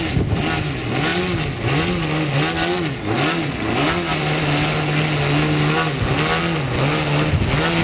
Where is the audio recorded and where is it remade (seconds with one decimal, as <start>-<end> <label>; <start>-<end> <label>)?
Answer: 0.0-7.8 recorded